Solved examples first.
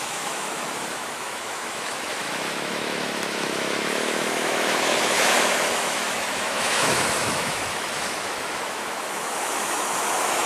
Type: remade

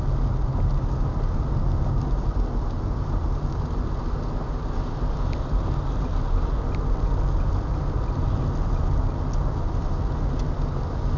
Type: recorded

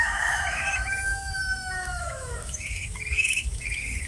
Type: remade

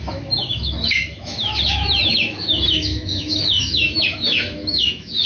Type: remade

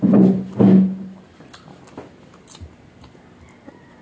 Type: recorded